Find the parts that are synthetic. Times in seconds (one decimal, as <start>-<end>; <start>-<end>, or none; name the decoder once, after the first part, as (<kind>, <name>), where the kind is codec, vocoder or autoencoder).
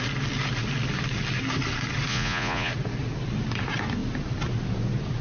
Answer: 2.1-2.7 (vocoder, Vocos)